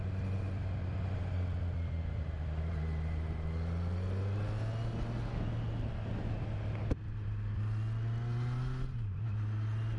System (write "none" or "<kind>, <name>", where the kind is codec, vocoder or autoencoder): none